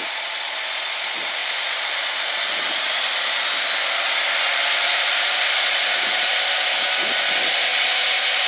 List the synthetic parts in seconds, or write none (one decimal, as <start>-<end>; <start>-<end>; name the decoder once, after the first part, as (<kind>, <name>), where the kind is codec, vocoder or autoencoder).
1.4-1.9 (vocoder, BigVGAN v2); 5.8-6.3